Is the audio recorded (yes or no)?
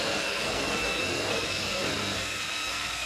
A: no